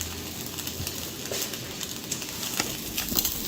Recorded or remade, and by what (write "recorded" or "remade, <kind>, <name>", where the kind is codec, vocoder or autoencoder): recorded